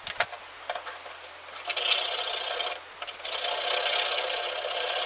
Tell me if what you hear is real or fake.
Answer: real